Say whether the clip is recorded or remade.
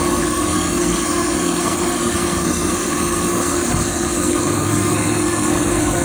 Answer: remade